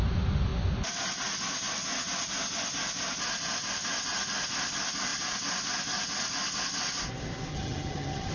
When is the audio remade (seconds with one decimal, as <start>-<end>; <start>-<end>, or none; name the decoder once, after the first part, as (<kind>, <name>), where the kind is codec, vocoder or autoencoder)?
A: 7.5-8.3 (vocoder, HiFi-GAN)